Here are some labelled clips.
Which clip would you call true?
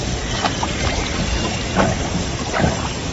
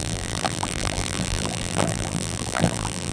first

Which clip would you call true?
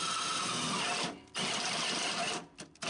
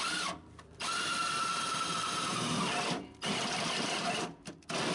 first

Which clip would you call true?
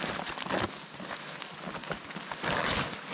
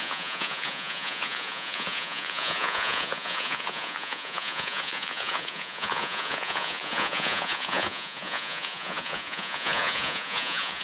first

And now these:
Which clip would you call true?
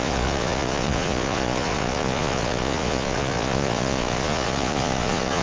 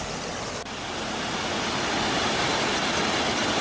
second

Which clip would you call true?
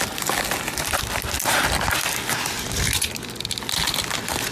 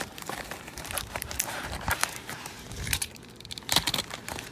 first